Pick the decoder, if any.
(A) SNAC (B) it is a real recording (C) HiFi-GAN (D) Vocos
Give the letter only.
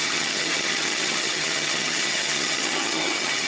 C